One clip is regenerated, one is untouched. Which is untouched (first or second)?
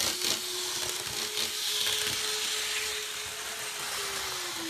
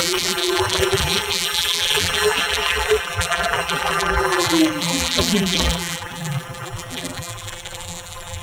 first